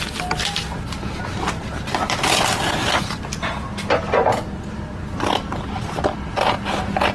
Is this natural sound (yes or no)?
yes